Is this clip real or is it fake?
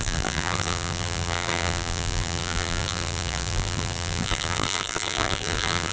fake